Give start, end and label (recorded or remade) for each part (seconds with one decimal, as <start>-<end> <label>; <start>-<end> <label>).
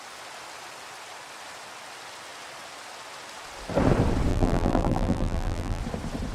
0.0-4.3 recorded; 4.3-5.8 remade; 5.8-6.3 recorded